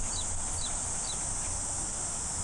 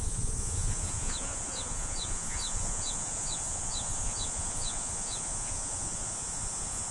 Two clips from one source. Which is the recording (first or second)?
first